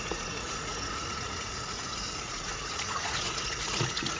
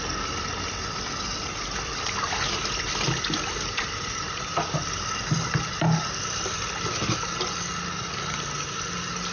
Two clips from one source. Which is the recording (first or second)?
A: second